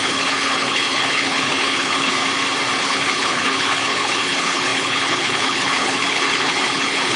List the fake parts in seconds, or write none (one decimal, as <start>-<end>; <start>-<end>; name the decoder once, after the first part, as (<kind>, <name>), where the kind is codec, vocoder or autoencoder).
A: 0.0-2.2 (codec, HILCodec); 2.8-7.2